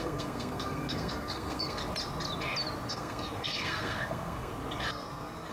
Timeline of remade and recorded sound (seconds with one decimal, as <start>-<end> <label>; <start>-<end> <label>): 0.0-1.8 remade; 1.8-2.9 recorded; 2.9-4.5 remade; 4.5-5.5 recorded